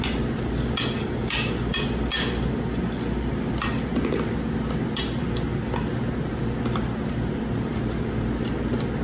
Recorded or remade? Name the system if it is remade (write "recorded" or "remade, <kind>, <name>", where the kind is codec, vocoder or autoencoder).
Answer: recorded